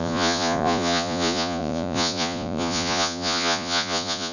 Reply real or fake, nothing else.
fake